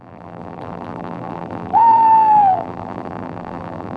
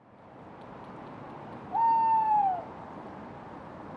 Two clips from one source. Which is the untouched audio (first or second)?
second